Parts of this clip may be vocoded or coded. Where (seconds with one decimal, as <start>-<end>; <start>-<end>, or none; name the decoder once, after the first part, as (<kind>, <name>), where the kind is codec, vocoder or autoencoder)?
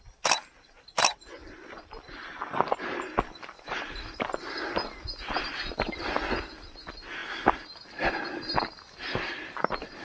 none